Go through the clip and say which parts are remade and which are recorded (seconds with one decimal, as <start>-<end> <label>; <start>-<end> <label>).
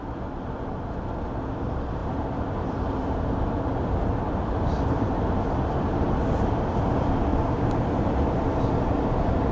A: 0.0-2.0 recorded; 2.0-5.3 remade; 5.3-7.3 recorded; 7.3-8.6 remade; 8.6-9.5 recorded